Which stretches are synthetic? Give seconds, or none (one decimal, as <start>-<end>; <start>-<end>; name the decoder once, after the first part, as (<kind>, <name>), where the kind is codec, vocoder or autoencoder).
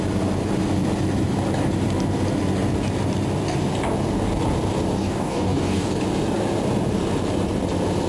5.0-5.9 (codec, DAC)